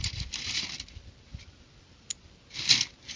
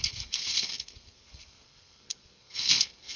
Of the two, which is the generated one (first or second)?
second